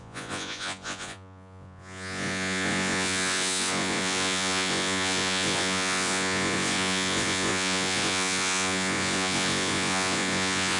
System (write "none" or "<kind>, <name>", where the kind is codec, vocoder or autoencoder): vocoder, Vocos